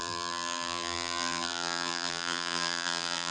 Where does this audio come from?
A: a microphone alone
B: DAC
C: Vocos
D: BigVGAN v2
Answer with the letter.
D